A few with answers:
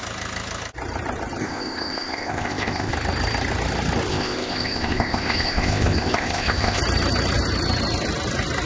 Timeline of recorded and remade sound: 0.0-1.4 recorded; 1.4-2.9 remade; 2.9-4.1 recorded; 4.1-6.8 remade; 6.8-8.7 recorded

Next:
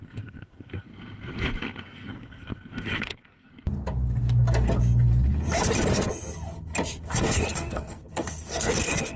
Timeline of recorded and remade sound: 0.0-0.9 remade; 0.9-1.8 recorded; 1.8-3.5 remade; 3.5-7.0 recorded; 7.0-9.2 remade

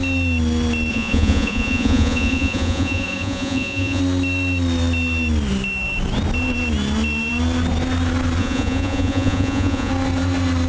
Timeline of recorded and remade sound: 0.0-0.9 recorded; 0.9-4.0 remade; 4.0-8.4 recorded; 8.4-9.9 remade; 9.9-10.7 recorded

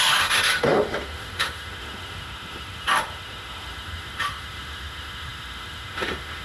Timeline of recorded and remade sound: 0.0-6.4 remade

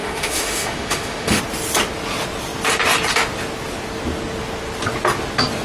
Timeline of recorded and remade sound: 0.0-1.4 remade; 1.4-5.6 recorded

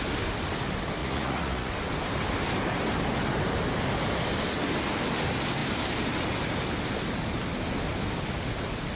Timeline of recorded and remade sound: 0.0-1.0 recorded; 1.0-1.7 remade; 1.7-9.0 recorded